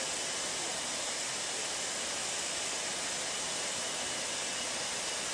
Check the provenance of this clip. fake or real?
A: real